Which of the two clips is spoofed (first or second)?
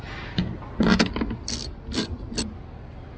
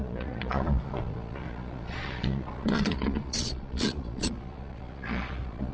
second